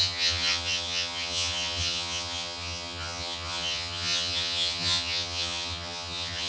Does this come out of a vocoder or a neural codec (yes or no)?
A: yes